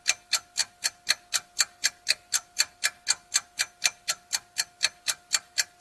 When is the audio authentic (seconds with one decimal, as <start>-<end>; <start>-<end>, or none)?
0.0-5.8